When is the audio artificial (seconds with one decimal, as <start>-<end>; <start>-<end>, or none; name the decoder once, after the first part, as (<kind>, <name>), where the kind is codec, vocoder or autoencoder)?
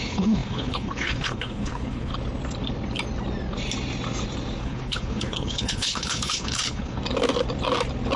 0.0-2.1 (codec, HILCodec); 4.6-7.0